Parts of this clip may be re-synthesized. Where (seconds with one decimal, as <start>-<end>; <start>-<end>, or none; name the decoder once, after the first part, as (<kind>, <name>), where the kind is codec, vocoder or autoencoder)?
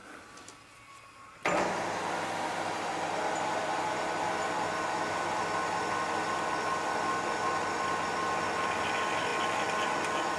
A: none